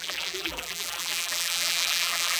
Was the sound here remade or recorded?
remade